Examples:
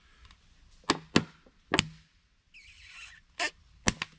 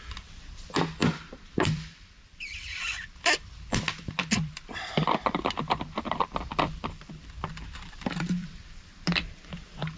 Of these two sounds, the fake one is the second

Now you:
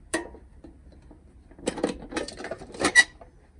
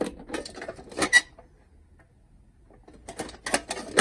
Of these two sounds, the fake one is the first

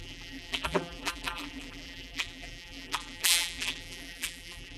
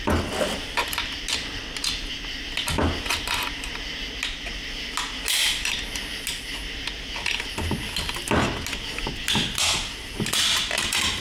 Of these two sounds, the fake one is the first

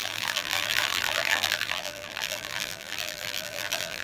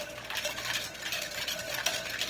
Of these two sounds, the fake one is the first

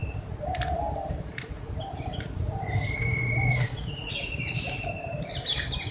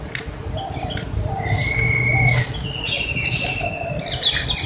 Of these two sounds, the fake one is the first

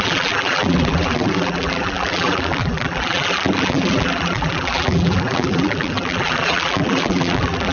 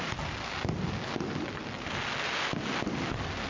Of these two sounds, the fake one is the first